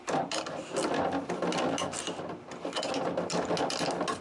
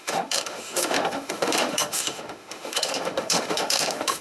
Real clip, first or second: first